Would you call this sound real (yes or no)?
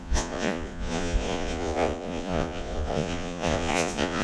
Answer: no